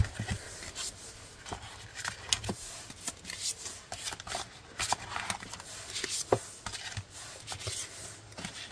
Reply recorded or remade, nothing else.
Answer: recorded